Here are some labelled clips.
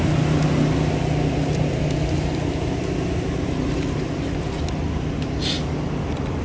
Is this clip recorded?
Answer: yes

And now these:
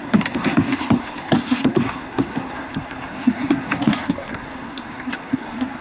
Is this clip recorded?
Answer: no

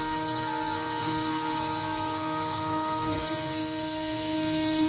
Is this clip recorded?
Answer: no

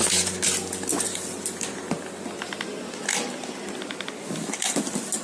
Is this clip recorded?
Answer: yes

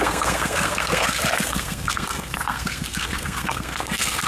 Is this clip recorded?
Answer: no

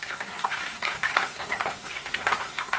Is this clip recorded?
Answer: no